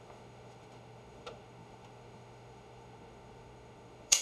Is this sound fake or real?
fake